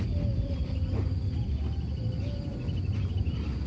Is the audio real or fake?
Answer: real